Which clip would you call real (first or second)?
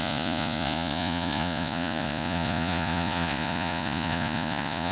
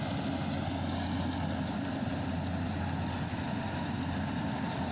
second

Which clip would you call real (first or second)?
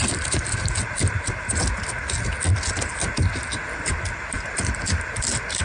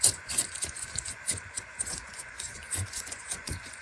first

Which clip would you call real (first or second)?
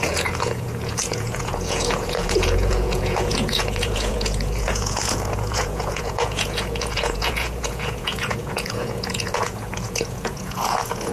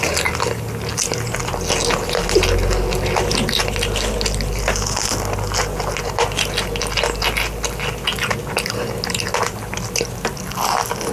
second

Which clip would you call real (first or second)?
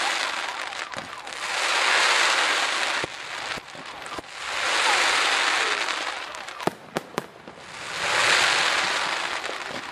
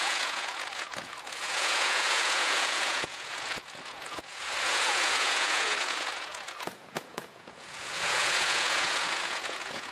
first